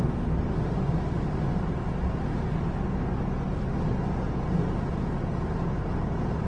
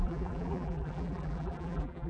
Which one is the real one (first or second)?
first